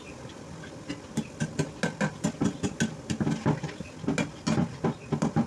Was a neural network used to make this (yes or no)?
no